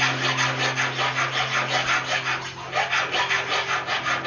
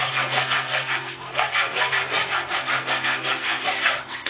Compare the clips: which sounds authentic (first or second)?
first